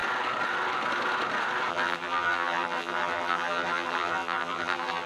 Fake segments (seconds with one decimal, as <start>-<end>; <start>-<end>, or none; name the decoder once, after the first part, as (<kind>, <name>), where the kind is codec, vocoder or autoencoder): 1.7-5.1 (vocoder, BigVGAN v2)